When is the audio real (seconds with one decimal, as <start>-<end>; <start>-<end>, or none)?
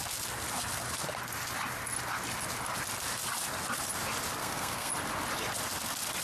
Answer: 0.0-4.4; 4.9-6.2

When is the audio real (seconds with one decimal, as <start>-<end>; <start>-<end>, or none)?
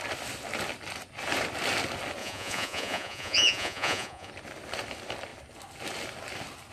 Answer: 0.0-2.2; 4.3-6.7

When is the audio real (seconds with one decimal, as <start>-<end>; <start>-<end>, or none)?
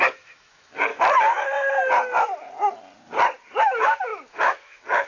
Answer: 0.9-3.6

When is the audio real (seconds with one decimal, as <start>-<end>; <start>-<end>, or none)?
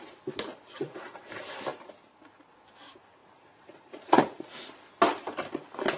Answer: 0.0-0.5; 1.2-3.2; 4.5-6.0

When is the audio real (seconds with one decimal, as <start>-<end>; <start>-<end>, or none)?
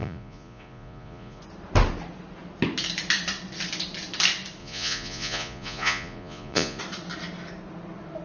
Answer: 1.4-4.6; 6.8-8.2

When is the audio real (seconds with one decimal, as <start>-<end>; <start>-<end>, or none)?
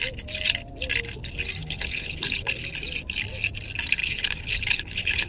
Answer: 0.0-1.6; 2.5-4.0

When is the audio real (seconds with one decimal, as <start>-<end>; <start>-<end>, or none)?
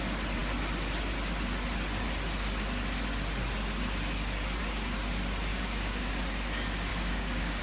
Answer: 0.0-5.5; 6.1-6.9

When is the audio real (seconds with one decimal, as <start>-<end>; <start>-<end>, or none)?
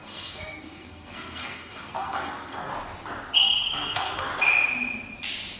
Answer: 2.7-3.4; 4.3-5.6